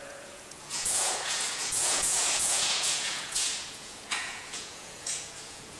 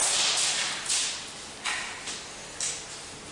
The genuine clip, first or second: second